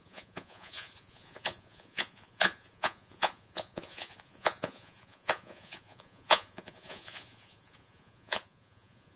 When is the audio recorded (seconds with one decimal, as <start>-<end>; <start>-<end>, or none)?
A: none